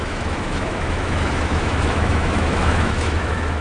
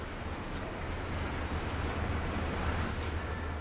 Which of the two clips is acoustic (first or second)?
second